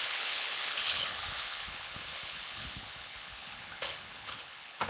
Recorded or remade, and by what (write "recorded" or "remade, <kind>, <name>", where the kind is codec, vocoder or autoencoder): remade, codec, HILCodec